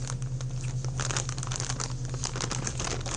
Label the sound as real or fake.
real